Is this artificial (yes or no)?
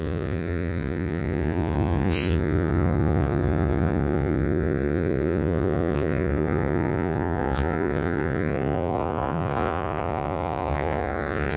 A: yes